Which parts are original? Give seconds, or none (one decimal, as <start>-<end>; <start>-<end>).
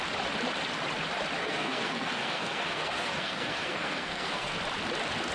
0.0-1.4; 4.6-5.3